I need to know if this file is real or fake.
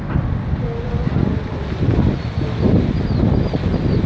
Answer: real